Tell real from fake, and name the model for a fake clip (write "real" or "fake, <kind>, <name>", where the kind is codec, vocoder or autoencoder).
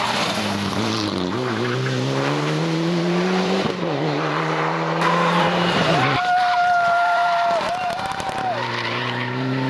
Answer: fake, vocoder, BigVGAN v2